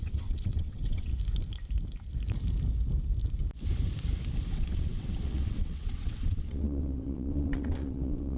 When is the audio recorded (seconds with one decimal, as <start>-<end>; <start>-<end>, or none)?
1.1-4.5